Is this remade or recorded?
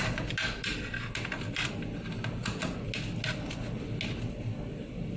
recorded